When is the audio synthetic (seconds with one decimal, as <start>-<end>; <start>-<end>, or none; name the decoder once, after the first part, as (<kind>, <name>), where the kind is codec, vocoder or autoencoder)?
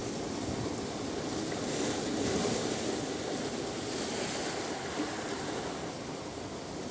none